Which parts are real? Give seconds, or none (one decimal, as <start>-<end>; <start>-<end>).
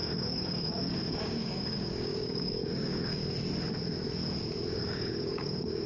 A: 3.2-4.7